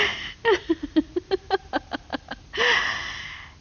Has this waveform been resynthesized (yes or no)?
no